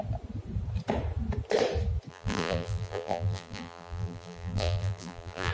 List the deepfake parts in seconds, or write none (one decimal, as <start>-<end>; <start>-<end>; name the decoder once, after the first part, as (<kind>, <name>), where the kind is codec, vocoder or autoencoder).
2.1-5.5 (vocoder, BigVGAN v2)

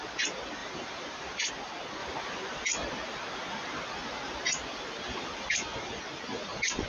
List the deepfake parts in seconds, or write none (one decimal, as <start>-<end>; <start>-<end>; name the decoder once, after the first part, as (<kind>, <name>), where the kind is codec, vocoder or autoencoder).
0.6-1.5 (vocoder, BigVGAN v2)